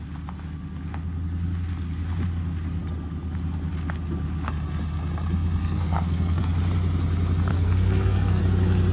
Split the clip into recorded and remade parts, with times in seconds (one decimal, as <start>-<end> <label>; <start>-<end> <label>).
0.0-5.6 recorded; 5.6-6.4 remade; 6.4-7.5 recorded; 7.5-8.4 remade; 8.4-8.9 recorded